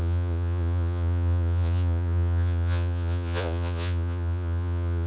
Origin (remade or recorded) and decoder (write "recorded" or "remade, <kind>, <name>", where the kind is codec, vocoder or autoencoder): remade, vocoder, Vocos